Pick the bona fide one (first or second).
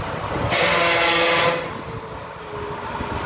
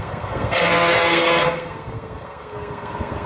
first